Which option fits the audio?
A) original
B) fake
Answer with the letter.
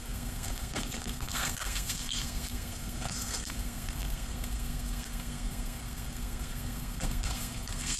B